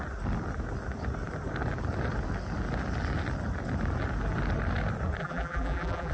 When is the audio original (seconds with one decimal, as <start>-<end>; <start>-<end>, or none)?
0.0-5.2